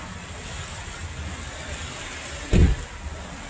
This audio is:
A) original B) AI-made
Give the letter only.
A